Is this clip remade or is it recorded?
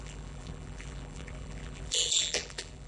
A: remade